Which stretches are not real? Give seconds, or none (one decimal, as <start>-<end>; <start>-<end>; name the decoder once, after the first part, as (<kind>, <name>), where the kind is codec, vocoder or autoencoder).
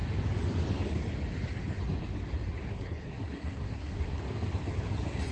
2.6-4.2 (codec, SNAC)